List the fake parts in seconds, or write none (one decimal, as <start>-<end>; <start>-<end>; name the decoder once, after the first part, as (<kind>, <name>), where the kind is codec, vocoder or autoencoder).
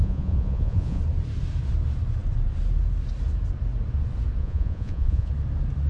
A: 0.0-1.0 (vocoder, Vocos); 4.4-5.3